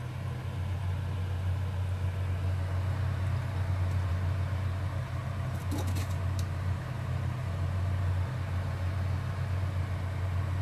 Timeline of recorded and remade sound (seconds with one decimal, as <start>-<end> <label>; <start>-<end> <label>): 0.0-10.6 recorded